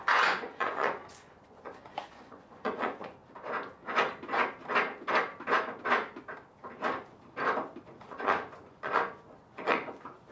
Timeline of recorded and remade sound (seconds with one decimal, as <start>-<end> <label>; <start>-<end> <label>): 0.0-3.2 remade; 3.2-7.8 recorded; 7.8-10.3 remade